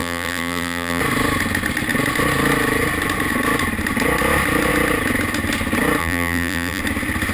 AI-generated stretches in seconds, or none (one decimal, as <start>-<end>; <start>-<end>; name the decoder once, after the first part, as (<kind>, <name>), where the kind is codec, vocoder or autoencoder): 0.0-1.0 (vocoder, BigVGAN v2); 6.0-6.8